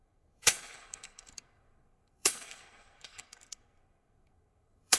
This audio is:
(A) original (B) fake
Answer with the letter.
B